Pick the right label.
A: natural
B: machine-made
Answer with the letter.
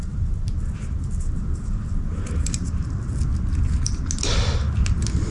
A